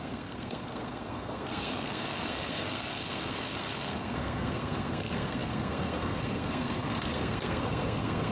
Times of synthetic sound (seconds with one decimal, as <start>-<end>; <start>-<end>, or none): 0.0-8.3